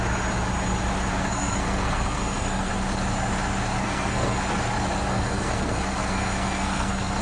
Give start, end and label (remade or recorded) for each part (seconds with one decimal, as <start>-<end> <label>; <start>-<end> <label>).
0.0-1.1 recorded; 1.1-2.7 remade; 2.7-3.8 recorded; 3.8-4.4 remade; 4.4-5.1 recorded; 5.1-7.2 remade